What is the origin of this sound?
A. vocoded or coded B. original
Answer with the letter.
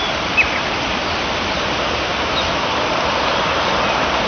A